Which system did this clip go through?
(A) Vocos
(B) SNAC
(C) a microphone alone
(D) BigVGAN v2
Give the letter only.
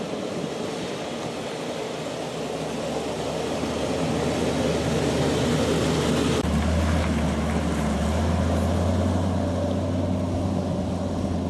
C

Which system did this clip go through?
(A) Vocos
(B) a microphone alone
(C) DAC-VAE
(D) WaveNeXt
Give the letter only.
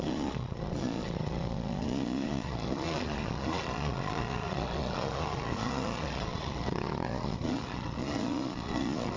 A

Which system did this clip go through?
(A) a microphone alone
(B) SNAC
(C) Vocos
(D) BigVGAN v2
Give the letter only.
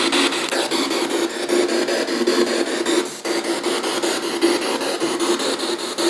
A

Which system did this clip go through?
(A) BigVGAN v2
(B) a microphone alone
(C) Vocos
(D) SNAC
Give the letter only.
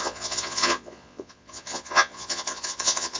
C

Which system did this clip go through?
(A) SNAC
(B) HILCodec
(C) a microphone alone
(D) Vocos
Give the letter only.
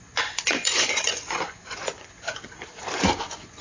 D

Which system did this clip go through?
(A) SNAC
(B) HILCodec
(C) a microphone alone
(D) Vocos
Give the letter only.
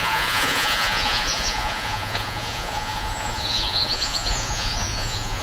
D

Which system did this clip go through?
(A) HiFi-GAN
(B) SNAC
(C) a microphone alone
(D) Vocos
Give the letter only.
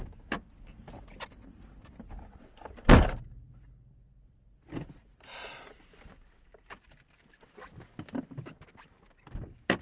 C